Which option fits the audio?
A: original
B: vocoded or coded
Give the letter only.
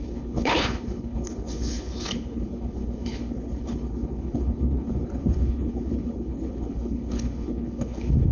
B